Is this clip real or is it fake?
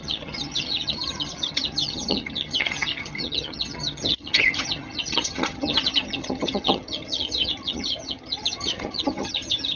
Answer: fake